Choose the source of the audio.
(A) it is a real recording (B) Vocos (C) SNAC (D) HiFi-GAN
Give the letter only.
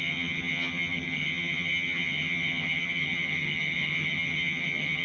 D